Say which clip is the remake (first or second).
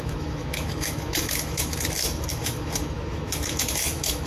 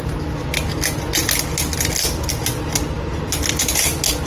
first